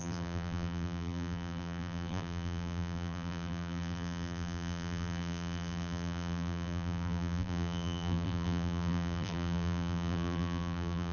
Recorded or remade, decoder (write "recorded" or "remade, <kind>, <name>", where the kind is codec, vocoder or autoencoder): remade, vocoder, BigVGAN v2